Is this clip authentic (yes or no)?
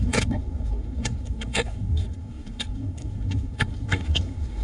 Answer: no